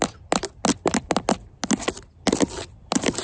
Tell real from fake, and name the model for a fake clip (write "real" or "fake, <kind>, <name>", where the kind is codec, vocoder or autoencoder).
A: real